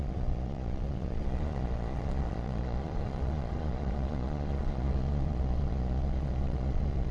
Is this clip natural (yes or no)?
no